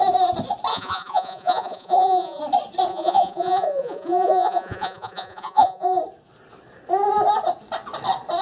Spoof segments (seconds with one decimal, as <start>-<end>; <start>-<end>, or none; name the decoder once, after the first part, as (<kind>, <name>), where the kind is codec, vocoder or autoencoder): 0.7-2.4 (vocoder, Vocos); 2.9-6.0

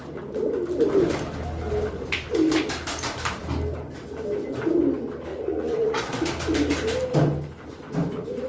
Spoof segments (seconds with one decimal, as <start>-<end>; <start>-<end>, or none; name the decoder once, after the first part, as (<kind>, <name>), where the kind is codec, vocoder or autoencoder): 5.3-6.0 (vocoder, Vocos)

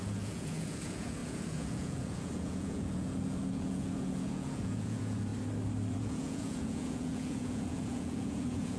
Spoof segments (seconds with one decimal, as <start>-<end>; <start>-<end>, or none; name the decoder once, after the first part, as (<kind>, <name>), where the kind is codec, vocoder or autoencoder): 0.0-5.3 (vocoder, Vocos); 5.9-8.8

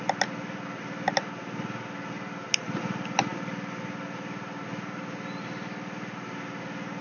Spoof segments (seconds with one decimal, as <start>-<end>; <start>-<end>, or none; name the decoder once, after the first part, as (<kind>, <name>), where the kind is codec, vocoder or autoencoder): none

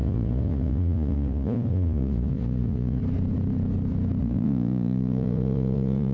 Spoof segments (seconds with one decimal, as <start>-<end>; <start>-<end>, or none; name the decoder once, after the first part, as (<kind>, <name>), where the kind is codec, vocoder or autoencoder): 0.0-3.0 (vocoder, Vocos); 4.2-6.1